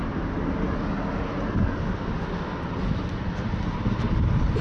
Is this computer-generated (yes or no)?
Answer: no